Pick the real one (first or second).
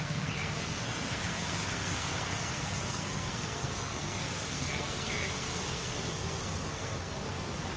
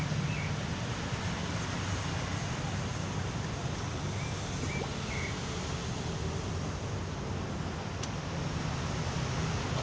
second